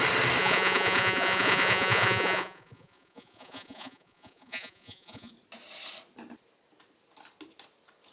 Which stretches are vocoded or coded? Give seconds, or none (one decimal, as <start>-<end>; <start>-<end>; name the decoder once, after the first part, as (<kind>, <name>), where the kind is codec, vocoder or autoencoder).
0.4-5.3 (vocoder, Vocos)

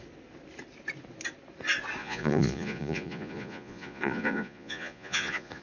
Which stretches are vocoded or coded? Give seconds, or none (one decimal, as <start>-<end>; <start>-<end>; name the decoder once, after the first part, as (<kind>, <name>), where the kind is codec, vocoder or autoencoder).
2.0-5.6 (vocoder, Vocos)

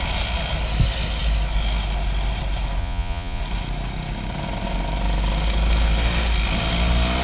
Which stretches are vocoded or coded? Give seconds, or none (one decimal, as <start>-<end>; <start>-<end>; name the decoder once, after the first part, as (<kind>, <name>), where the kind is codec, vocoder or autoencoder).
2.8-3.4 (vocoder, Vocos)